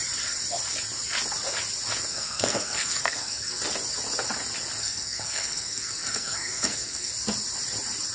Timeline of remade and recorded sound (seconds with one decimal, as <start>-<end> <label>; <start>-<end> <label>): 0.0-2.1 recorded; 2.1-3.6 remade; 3.6-4.8 recorded; 4.8-7.1 remade; 7.1-8.1 recorded